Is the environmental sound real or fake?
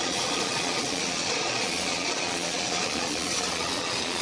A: fake